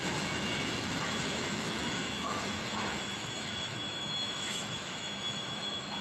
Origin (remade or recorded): remade